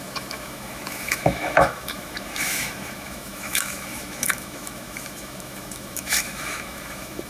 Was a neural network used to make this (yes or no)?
yes